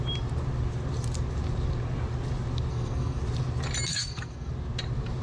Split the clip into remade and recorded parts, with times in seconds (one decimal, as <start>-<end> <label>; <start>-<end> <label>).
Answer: 0.0-2.7 recorded; 2.7-3.2 remade; 3.2-3.9 recorded; 3.9-4.5 remade; 4.5-5.2 recorded